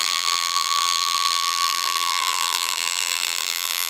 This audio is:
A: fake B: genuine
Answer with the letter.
A